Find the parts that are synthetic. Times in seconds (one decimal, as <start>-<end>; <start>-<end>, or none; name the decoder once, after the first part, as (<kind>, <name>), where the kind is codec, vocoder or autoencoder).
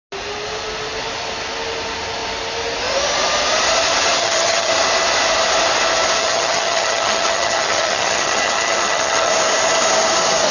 4.2-4.7 (vocoder, HiFi-GAN); 6.2-9.3